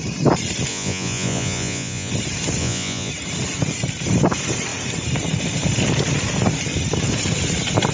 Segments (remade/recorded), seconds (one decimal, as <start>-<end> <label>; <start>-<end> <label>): 0.0-0.7 recorded; 0.7-2.1 remade; 2.1-2.6 recorded; 2.6-3.1 remade; 3.1-7.9 recorded

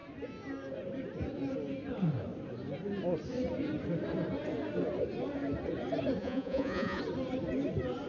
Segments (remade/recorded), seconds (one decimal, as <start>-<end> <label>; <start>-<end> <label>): 0.0-6.2 recorded; 6.2-7.0 remade; 7.0-8.1 recorded